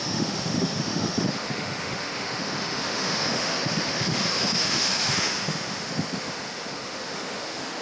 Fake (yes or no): yes